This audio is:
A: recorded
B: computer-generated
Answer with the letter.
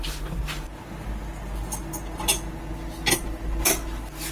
A